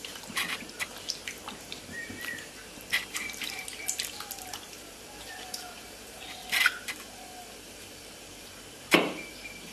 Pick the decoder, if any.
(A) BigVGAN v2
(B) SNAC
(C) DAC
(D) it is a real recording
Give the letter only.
A